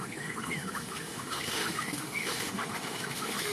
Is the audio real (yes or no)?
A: no